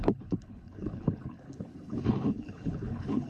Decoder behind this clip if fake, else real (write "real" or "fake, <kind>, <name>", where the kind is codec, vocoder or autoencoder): fake, codec, HILCodec